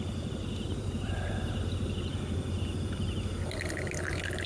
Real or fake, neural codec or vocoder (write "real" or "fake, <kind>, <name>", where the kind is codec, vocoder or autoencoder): real